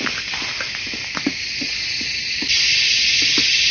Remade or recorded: recorded